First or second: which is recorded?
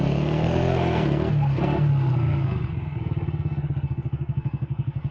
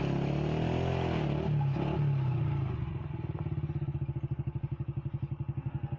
second